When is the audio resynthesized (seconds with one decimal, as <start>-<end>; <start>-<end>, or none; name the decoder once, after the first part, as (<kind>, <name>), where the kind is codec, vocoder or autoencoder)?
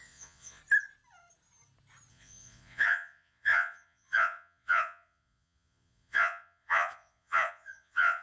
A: 0.0-0.6 (vocoder, Vocos); 2.1-8.2